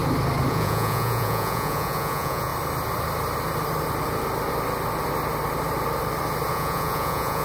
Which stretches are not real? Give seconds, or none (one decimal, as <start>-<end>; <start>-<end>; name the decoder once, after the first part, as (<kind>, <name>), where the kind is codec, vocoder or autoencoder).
0.5-2.5 (vocoder, Vocos); 6.5-7.4